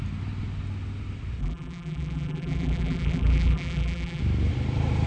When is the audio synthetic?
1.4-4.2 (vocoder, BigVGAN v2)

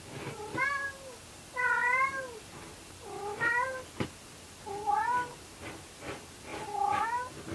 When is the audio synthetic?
1.8-2.6 (vocoder, BigVGAN v2); 6.5-7.0

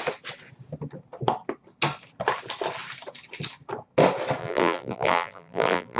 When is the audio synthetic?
4.4-6.0 (vocoder, BigVGAN v2)

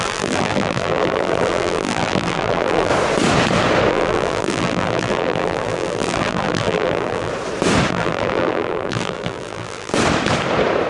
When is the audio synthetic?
0.0-2.9 (vocoder, BigVGAN v2); 3.9-7.3; 7.9-9.9

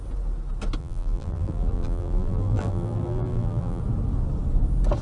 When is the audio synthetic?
0.8-3.8 (vocoder, BigVGAN v2)

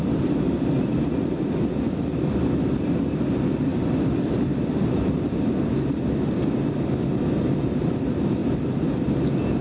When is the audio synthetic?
3.7-5.1 (vocoder, BigVGAN v2)